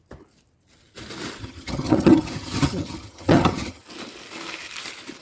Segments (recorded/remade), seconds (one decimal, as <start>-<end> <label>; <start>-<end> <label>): 0.0-1.4 recorded; 1.4-3.8 remade; 3.8-5.2 recorded